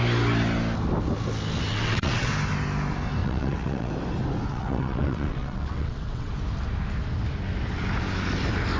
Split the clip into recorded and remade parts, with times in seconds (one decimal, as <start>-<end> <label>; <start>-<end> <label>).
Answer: 0.0-1.7 recorded; 1.7-2.3 remade; 2.3-3.2 recorded; 3.2-3.9 remade; 3.9-4.5 recorded; 4.5-6.3 remade; 6.3-8.8 recorded